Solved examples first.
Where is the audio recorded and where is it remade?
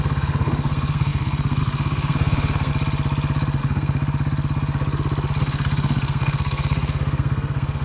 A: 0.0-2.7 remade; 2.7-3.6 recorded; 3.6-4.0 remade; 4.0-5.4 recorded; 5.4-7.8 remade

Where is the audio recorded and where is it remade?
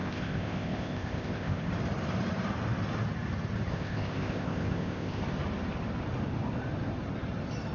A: 0.0-1.7 remade; 1.7-3.7 recorded; 3.7-5.2 remade; 5.2-7.7 recorded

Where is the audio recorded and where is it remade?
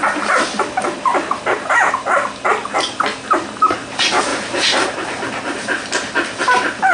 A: 0.0-1.1 recorded; 1.1-1.9 remade; 1.9-4.3 recorded; 4.3-4.9 remade; 4.9-6.9 recorded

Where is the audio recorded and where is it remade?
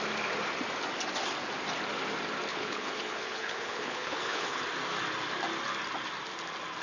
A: 0.0-2.5 recorded; 2.5-4.6 remade; 4.6-6.8 recorded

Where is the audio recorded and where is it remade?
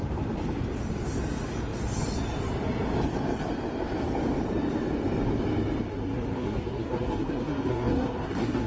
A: 0.0-5.9 recorded; 5.9-8.7 remade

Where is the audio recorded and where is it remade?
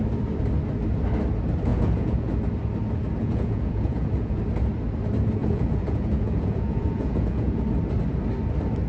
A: 0.0-1.7 recorded; 1.7-2.3 remade; 2.3-3.2 recorded; 3.2-4.4 remade; 4.4-5.4 recorded; 5.4-7.6 remade; 7.6-8.9 recorded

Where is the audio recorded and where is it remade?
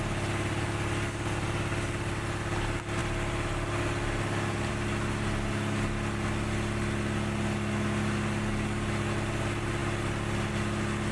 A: 0.0-11.1 recorded